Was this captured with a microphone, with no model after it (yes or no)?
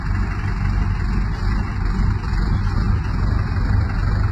yes